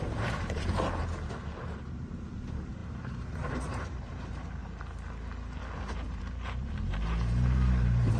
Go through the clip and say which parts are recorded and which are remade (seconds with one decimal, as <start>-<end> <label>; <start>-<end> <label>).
0.0-1.0 remade; 1.0-1.6 recorded; 1.6-4.6 remade; 4.6-6.2 recorded; 6.2-8.2 remade